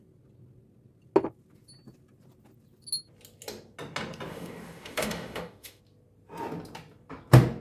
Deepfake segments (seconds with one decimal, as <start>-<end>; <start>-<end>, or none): 4.3-5.8

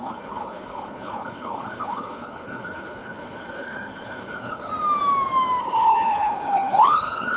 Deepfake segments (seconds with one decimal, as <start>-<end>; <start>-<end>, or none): 0.0-4.7; 5.6-7.4

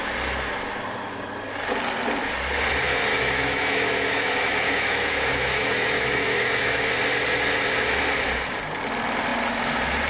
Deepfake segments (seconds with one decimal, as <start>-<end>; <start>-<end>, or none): 3.1-6.9